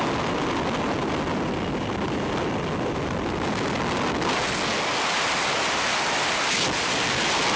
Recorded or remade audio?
recorded